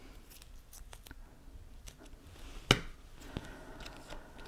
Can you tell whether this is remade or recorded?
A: recorded